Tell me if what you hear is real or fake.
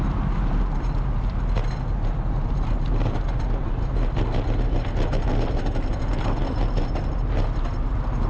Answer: real